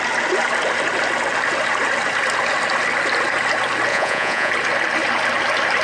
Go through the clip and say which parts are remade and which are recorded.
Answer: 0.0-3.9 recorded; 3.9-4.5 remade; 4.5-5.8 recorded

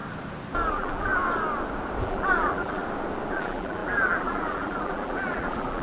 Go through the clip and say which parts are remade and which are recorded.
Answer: 0.0-0.7 recorded; 0.7-1.1 remade; 1.1-2.0 recorded; 2.0-2.8 remade; 2.8-3.3 recorded; 3.3-5.8 remade